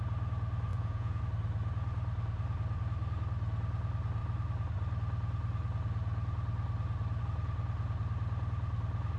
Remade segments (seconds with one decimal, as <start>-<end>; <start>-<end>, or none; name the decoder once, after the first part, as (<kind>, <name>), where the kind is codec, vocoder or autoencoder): 0.7-1.2 (vocoder, Vocos)